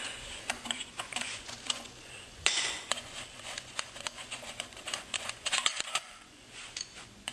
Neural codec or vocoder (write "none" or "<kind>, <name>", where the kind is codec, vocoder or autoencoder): vocoder, Vocos